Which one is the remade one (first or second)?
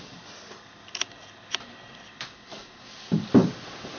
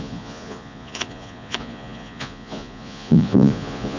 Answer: second